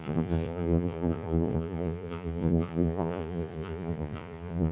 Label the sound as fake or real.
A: fake